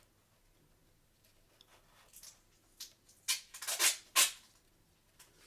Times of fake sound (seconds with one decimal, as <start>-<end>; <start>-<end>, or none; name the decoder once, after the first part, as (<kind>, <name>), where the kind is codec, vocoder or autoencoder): none